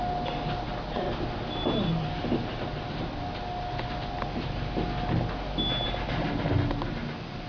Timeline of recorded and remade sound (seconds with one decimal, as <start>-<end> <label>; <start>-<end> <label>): 0.0-7.5 recorded